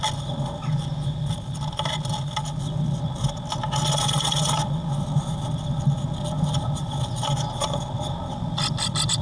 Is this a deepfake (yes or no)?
no